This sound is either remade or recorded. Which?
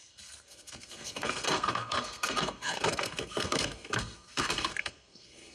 remade